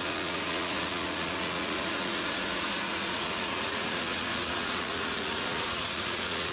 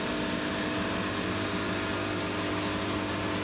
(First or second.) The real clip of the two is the second